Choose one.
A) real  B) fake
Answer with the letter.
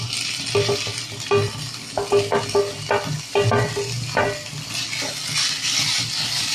A